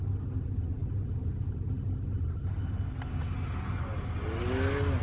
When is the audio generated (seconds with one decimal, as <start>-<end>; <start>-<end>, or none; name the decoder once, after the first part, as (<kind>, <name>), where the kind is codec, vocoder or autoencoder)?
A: none